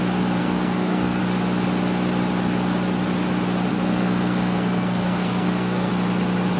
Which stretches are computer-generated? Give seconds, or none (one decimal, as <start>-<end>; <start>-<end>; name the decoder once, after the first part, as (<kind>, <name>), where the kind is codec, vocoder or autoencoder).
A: 0.4-1.2 (codec, SNAC); 3.7-5.9